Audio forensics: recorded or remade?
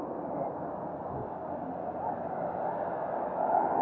recorded